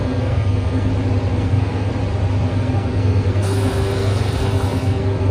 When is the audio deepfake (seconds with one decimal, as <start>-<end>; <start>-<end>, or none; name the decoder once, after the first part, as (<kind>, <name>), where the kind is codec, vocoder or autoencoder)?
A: 0.0-0.9 (codec, SNAC); 1.3-1.9; 2.5-5.3